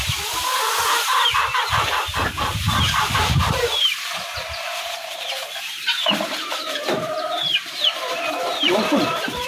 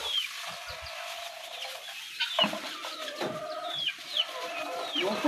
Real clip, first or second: second